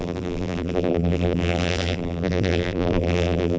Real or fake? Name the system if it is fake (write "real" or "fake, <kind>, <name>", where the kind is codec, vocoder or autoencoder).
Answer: fake, vocoder, BigVGAN v2